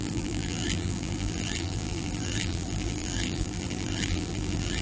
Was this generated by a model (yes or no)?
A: yes